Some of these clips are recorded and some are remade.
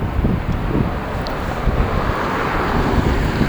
recorded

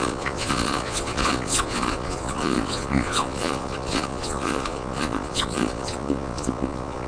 remade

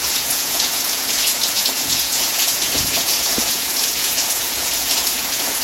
remade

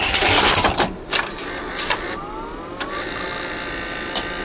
recorded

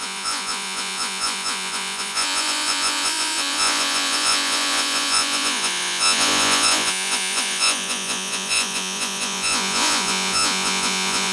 remade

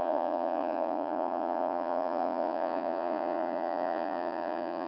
remade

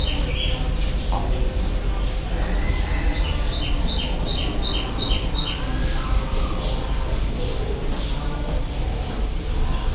recorded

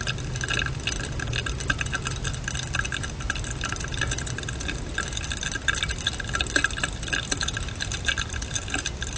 recorded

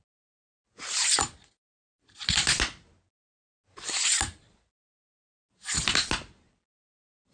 recorded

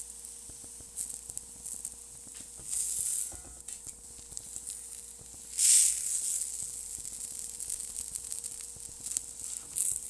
recorded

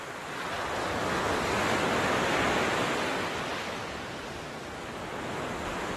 recorded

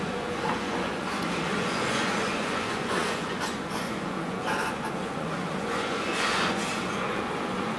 remade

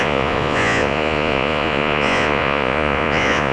remade